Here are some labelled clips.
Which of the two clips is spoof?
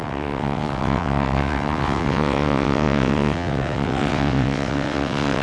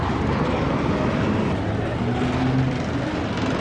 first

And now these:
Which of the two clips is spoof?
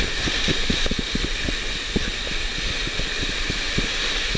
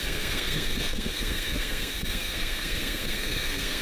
second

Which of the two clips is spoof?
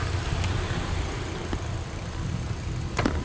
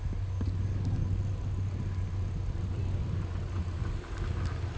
first